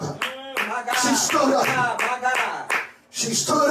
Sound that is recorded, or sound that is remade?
recorded